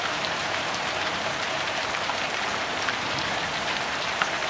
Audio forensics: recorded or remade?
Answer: remade